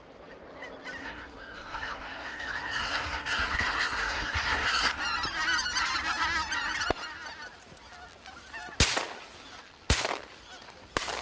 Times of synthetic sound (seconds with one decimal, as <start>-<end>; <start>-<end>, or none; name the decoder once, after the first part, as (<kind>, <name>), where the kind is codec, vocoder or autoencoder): 1.0-5.0 (codec, SNAC)

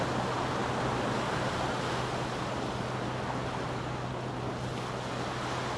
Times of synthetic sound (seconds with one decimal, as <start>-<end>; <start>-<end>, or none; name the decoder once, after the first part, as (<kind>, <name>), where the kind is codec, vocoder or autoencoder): none

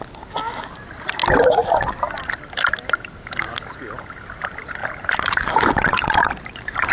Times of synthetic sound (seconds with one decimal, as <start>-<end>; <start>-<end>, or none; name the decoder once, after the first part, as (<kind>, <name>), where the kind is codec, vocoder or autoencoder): 4.8-6.9 (vocoder, BigVGAN v2)

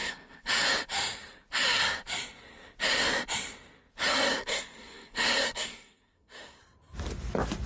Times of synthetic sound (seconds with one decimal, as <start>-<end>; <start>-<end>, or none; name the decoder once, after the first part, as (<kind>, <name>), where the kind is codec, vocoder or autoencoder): 0.0-0.5 (codec, SNAC); 4.1-6.6

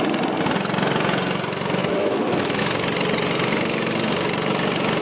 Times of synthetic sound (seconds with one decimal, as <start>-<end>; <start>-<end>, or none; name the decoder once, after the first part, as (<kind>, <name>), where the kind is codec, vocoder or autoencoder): 1.8-2.6 (autoencoder, DAC-VAE)

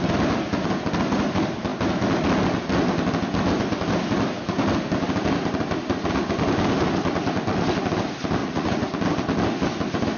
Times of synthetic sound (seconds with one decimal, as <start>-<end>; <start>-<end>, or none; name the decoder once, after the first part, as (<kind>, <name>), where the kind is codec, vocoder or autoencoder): 8.4-8.9 (vocoder, Vocos)